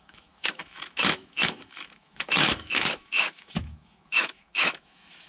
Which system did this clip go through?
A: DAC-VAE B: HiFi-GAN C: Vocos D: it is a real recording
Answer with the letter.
A